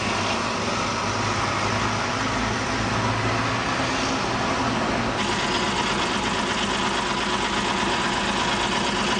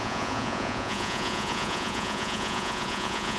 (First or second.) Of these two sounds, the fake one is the second